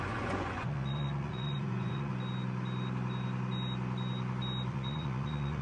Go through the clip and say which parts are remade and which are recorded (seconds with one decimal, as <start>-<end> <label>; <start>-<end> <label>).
0.0-2.1 remade; 2.1-4.7 recorded; 4.7-5.6 remade